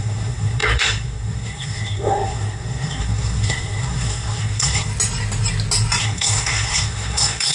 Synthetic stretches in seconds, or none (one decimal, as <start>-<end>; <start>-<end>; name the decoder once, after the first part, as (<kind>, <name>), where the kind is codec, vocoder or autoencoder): 0.0-4.9 (codec, SNAC); 6.0-7.5